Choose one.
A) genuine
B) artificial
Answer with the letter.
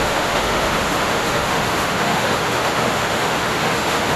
B